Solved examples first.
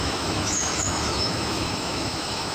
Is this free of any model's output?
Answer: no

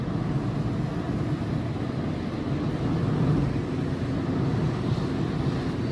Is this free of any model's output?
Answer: yes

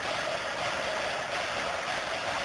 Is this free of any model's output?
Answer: yes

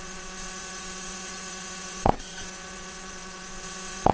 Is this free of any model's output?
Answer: no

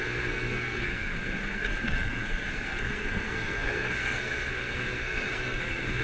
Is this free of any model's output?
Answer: no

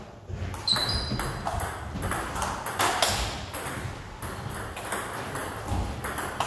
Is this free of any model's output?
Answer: yes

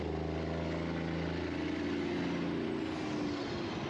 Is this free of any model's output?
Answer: yes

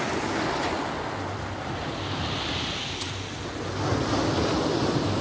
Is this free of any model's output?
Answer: yes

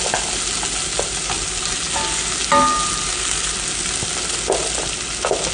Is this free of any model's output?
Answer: yes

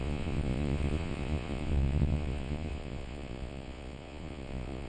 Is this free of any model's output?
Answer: no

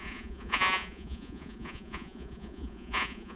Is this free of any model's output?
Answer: no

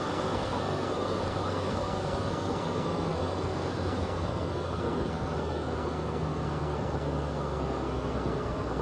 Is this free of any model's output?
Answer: no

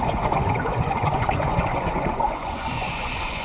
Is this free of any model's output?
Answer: no